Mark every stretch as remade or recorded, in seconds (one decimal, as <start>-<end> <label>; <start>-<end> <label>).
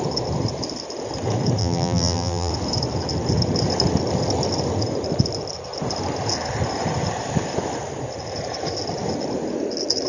0.0-1.6 recorded; 1.6-2.5 remade; 2.5-10.1 recorded